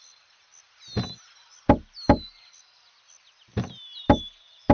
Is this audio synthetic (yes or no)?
no